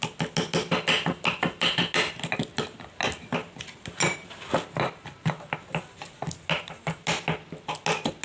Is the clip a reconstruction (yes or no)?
no